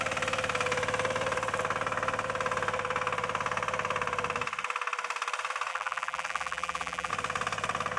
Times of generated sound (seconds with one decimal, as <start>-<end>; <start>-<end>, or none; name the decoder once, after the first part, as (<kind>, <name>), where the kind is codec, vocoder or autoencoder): 5.7-7.1 (vocoder, BigVGAN v2)